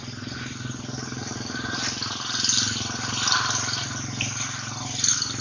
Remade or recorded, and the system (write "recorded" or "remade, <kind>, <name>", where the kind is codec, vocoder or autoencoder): recorded